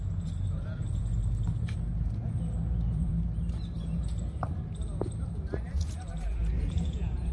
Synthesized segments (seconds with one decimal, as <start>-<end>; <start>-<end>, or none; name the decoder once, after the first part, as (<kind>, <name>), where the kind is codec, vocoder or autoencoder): 0.0-1.2 (vocoder, Vocos); 2.7-3.1; 5.5-7.3